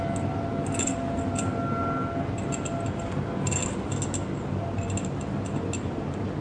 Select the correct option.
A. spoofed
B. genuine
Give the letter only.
B